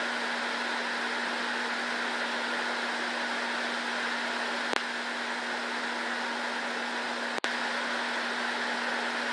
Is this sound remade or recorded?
recorded